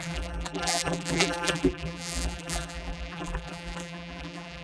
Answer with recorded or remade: remade